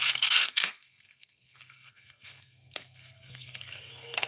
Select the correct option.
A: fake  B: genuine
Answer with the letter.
A